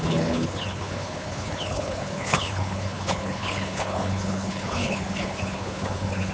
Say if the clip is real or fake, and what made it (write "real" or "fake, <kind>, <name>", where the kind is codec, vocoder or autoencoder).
fake, codec, HILCodec